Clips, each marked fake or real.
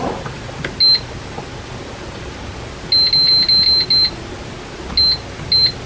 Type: real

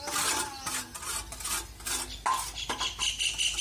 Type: real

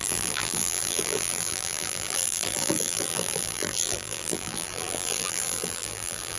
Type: fake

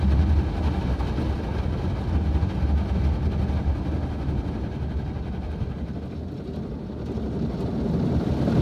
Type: real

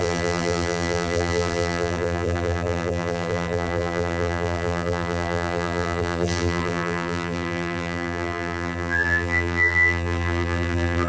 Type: fake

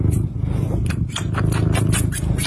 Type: real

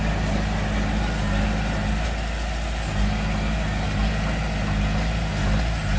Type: real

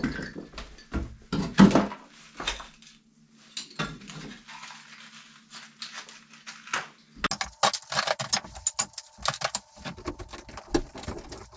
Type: real